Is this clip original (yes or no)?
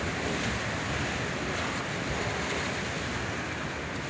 yes